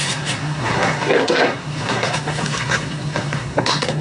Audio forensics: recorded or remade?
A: remade